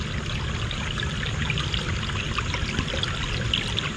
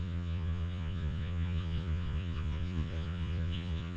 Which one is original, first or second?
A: first